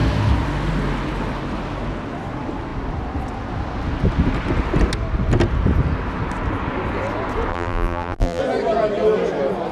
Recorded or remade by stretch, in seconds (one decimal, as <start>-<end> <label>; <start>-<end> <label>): 0.0-7.5 recorded; 7.5-8.4 remade; 8.4-9.7 recorded